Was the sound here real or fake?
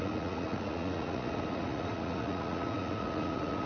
fake